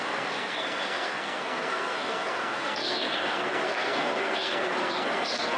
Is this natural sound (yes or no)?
no